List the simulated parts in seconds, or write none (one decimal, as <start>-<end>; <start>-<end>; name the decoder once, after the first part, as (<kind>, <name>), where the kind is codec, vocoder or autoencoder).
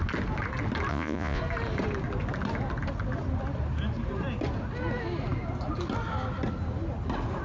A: 0.9-1.4 (vocoder, Vocos)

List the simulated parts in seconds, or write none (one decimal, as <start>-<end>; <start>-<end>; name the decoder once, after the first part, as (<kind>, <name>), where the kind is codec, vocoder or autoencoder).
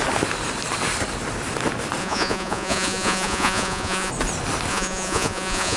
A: 2.0-4.1 (vocoder, Vocos); 4.7-5.8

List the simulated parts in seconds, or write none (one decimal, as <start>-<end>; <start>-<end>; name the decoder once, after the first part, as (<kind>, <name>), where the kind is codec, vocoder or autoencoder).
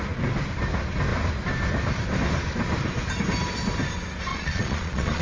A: 4.3-5.2 (vocoder, Vocos)